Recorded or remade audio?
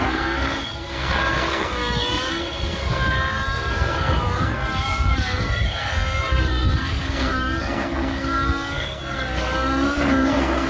remade